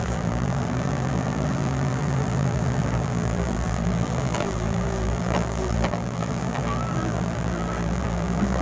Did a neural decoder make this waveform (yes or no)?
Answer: yes